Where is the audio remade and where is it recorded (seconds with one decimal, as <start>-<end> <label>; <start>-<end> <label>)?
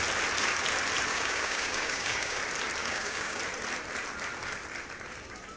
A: 0.0-1.1 recorded; 1.1-2.4 remade; 2.4-2.8 recorded; 2.8-3.4 remade; 3.4-5.6 recorded